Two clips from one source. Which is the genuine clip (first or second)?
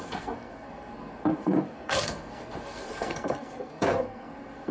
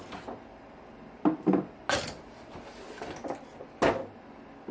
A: second